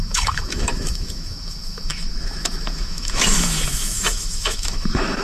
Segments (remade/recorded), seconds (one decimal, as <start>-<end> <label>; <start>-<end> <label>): 0.0-5.2 remade